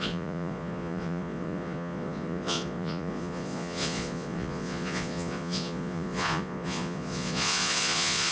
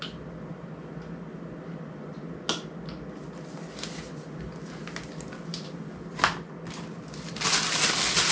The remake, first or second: first